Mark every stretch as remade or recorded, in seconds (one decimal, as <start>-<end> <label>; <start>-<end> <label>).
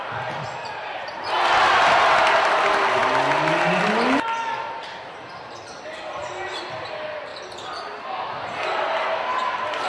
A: 0.0-9.9 recorded